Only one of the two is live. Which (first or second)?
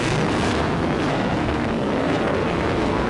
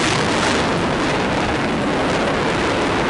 second